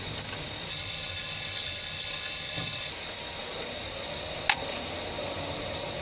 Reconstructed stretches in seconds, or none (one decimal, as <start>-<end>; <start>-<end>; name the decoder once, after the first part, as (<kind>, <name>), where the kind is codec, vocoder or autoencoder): 0.7-2.9 (codec, HILCodec)